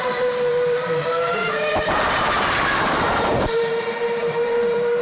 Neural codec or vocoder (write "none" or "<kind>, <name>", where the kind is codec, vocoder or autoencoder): vocoder, BigVGAN v2